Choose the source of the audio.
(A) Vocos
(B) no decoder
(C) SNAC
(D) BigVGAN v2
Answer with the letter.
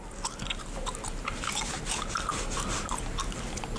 B